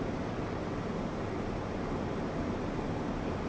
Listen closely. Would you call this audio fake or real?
real